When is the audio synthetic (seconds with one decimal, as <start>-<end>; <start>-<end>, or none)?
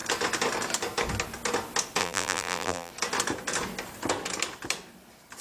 2.0-2.9